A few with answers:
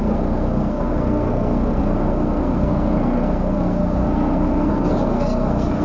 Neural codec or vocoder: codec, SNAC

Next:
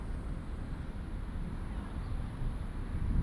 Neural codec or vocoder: none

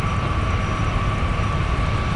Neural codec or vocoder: none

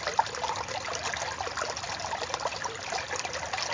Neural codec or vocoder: none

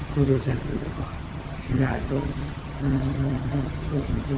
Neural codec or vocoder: vocoder, HiFi-GAN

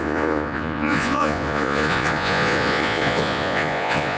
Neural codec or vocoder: vocoder, Vocos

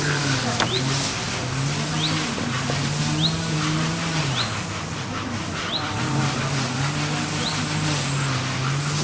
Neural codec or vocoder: vocoder, BigVGAN v2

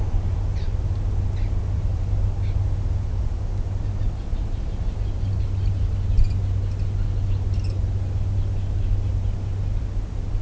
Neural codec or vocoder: none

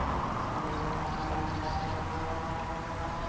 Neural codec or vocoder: vocoder, BigVGAN v2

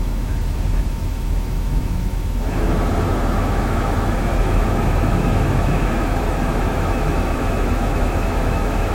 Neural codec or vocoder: autoencoder, DAC-VAE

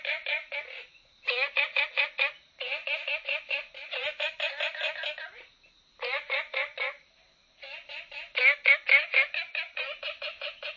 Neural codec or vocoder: none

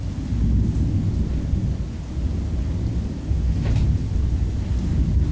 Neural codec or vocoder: none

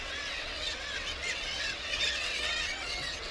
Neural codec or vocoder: vocoder, WaveNeXt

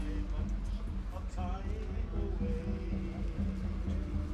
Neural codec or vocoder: none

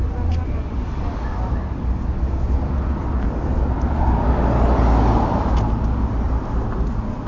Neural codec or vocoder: none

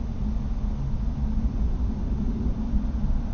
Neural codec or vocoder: none